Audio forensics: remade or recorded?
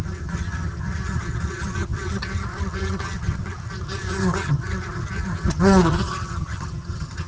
remade